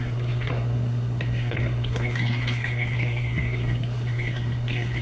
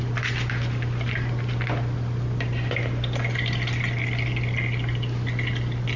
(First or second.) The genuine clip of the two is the second